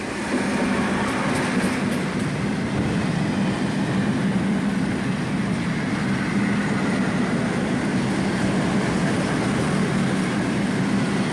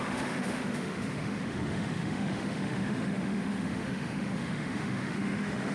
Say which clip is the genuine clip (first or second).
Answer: first